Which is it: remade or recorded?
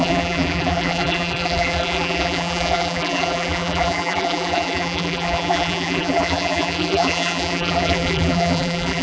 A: remade